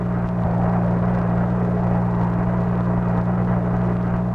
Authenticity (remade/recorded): recorded